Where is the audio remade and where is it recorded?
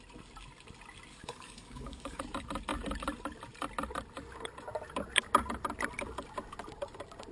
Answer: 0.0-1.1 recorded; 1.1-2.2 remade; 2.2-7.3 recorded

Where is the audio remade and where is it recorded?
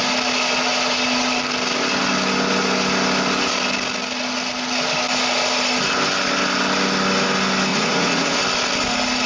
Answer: 0.0-7.7 recorded; 7.7-8.4 remade; 8.4-9.3 recorded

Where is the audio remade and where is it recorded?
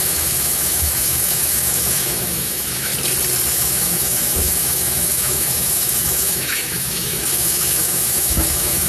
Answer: 0.0-2.9 remade; 2.9-3.5 recorded; 3.5-8.9 remade